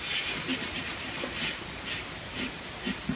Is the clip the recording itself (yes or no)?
yes